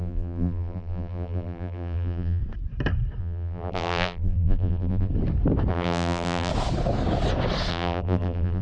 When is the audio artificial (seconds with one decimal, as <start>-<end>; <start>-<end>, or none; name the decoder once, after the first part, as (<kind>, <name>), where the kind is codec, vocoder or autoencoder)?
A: 0.0-2.4 (vocoder, BigVGAN v2); 3.2-5.1; 5.7-6.5; 7.7-8.6